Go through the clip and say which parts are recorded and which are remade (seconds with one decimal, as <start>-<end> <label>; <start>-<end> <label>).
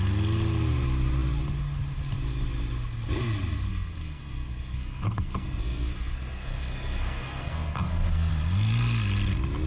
0.0-3.7 recorded; 3.7-8.3 remade; 8.3-9.7 recorded